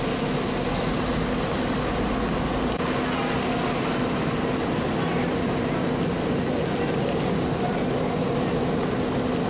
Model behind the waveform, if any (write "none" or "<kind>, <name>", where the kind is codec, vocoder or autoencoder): none